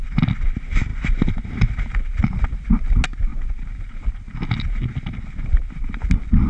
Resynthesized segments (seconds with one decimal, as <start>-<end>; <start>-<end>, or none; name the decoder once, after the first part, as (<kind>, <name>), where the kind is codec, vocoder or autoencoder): none